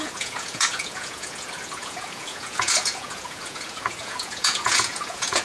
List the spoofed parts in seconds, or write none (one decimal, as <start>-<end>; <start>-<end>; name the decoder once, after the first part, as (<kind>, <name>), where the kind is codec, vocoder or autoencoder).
0.0-5.4 (vocoder, Vocos)